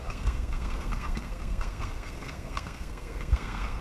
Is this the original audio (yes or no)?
no